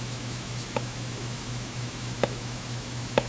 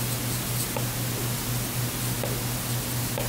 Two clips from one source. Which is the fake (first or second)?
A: first